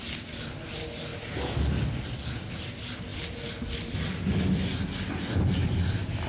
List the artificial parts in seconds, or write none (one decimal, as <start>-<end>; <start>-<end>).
none